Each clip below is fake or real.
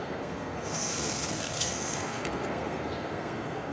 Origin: fake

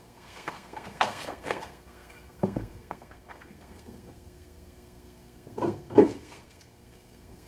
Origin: fake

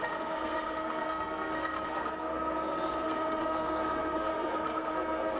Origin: fake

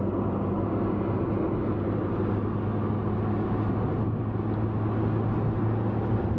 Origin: real